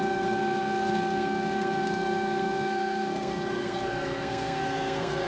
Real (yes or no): no